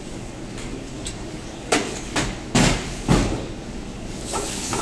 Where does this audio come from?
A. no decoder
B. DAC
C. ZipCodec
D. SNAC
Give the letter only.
B